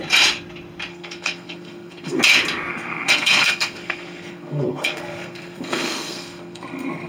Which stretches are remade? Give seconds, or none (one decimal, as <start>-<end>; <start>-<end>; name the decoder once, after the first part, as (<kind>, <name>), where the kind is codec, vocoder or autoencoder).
0.9-2.2 (codec, SNAC); 2.7-7.1